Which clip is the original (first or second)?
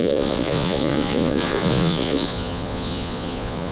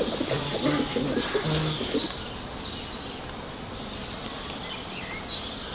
second